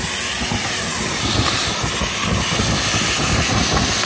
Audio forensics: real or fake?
real